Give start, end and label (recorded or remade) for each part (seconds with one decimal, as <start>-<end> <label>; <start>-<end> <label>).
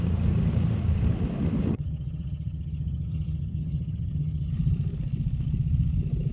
0.0-1.7 recorded; 1.7-4.5 remade; 4.5-6.3 recorded